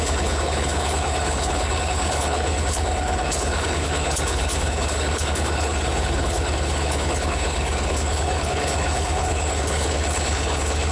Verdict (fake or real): fake